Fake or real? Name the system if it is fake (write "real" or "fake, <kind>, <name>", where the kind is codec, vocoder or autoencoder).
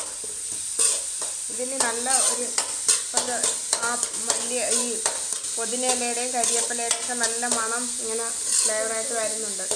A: real